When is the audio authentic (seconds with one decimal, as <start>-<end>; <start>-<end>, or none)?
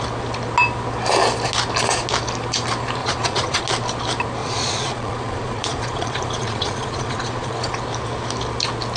0.0-3.0; 3.6-4.4; 7.7-9.0